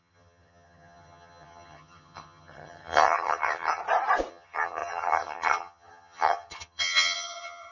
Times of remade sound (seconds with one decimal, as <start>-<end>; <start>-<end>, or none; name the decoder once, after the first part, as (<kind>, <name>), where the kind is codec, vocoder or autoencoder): 0.0-3.8 (vocoder, HiFi-GAN); 4.3-7.7